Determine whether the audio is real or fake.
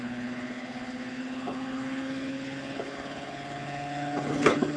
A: fake